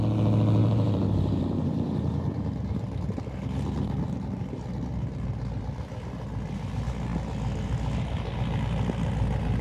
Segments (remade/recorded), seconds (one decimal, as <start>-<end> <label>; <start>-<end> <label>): 0.0-0.6 recorded; 0.6-5.6 remade; 5.6-9.6 recorded